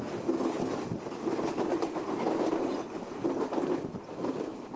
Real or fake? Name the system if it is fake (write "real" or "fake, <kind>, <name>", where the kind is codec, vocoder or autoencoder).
real